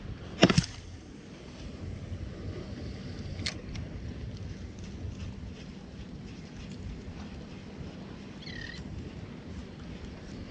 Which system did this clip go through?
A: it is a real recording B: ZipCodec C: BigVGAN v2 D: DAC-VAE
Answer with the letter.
A